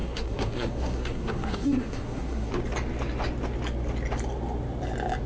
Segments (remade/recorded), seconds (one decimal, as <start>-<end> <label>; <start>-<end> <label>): 0.0-2.5 remade; 2.5-5.3 recorded